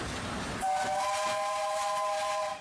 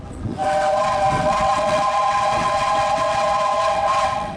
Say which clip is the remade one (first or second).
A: second